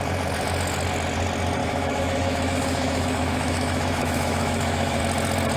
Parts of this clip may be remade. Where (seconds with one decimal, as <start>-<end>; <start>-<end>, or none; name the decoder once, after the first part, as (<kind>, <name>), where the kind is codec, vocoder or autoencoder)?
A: 1.6-5.0 (autoencoder, DAC-VAE)